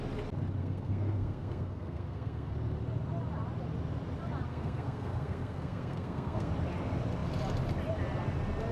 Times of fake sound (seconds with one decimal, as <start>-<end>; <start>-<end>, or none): 0.6-2.5; 4.5-6.5